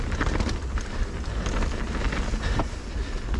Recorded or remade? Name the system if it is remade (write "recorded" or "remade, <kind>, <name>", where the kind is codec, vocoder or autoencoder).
recorded